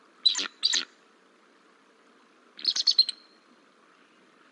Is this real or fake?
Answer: real